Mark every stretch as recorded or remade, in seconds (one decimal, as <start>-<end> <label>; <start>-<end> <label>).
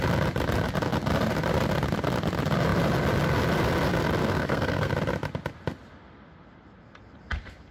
0.0-4.2 recorded; 4.2-4.9 remade; 4.9-7.7 recorded